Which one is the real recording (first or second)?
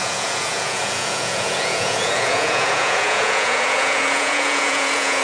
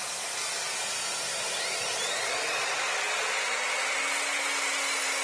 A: second